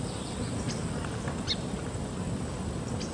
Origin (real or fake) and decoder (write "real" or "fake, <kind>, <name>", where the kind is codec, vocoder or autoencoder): real